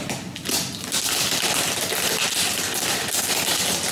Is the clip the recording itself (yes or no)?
yes